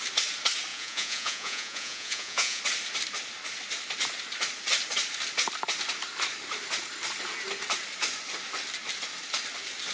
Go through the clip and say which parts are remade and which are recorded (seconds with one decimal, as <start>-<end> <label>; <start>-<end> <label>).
0.0-0.7 recorded; 0.7-2.6 remade; 2.6-9.9 recorded